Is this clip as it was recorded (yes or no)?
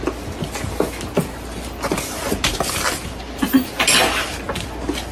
yes